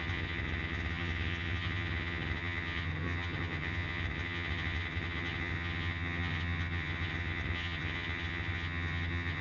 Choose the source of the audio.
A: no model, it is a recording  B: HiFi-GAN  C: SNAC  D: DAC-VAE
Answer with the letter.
B